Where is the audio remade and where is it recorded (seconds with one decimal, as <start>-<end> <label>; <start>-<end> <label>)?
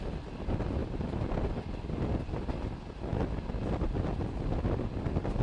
0.0-5.4 recorded